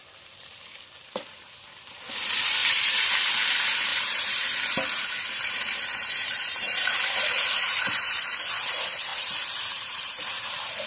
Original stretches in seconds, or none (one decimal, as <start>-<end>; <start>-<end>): 0.0-2.6; 3.5-3.9; 8.2-9.1